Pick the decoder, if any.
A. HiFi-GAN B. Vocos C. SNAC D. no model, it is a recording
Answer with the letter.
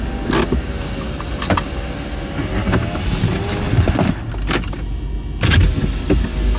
D